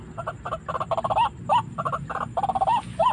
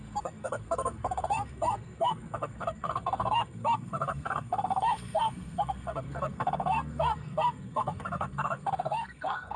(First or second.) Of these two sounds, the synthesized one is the second